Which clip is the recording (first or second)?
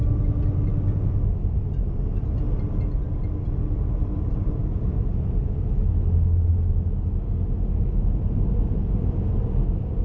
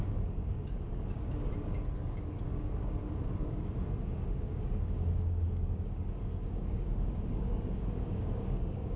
first